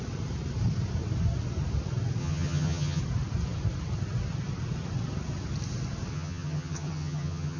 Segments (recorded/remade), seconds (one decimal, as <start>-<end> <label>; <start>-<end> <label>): 0.0-2.2 recorded; 2.2-3.0 remade; 3.0-6.1 recorded; 6.1-7.6 remade

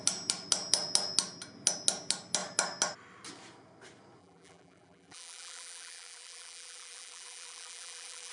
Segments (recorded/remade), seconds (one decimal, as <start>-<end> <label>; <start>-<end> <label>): 0.0-4.2 recorded; 4.2-8.3 remade

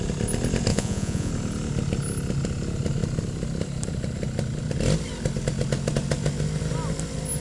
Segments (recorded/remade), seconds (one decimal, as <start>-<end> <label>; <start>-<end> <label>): 0.0-0.7 recorded; 0.7-1.3 remade; 1.3-7.4 recorded

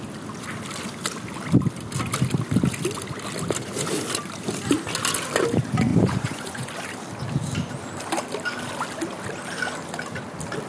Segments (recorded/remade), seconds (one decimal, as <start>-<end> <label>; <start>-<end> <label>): 0.0-5.9 recorded; 5.9-6.7 remade; 6.7-10.7 recorded